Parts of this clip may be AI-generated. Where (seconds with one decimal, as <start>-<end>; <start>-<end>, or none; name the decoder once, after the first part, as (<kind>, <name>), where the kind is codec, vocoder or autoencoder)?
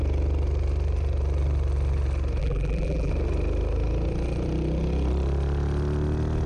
2.4-3.1 (vocoder, BigVGAN v2)